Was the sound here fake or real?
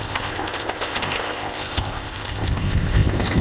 fake